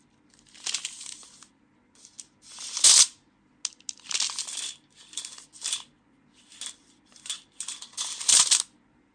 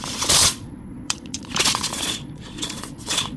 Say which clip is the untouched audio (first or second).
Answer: first